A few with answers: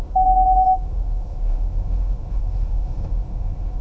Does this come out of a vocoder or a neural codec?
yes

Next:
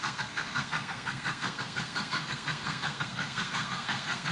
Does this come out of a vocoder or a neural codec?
yes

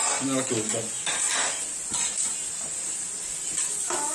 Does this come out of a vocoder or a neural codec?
no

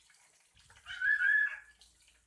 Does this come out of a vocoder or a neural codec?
yes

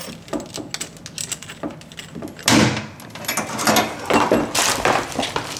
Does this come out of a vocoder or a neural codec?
no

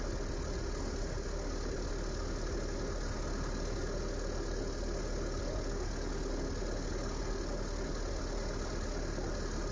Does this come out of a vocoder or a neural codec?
no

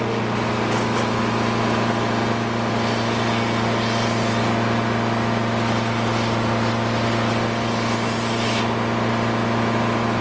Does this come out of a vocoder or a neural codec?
no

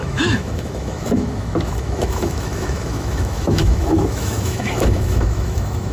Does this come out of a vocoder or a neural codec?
yes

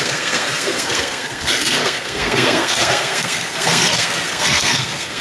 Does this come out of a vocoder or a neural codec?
yes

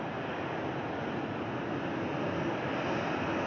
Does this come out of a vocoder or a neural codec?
no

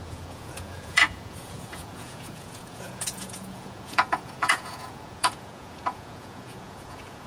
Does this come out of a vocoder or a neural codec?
yes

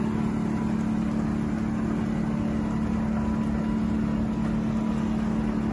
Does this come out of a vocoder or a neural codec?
no